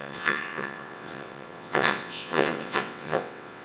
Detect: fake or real fake